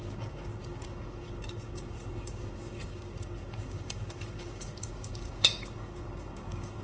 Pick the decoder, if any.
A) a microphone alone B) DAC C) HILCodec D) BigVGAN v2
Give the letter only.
B